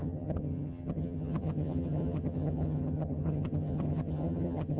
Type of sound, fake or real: fake